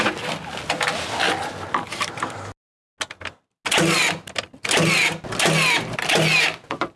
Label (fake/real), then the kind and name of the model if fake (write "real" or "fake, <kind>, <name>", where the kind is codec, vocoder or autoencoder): real